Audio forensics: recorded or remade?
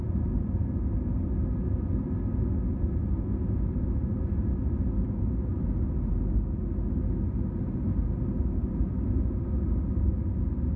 recorded